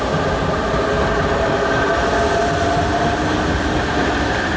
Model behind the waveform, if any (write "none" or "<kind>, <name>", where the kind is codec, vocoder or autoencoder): none